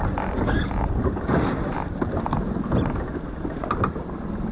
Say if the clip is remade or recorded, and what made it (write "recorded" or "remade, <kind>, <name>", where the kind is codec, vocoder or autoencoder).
recorded